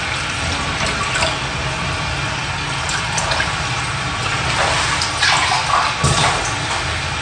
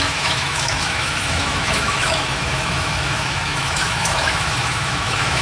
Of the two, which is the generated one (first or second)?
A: second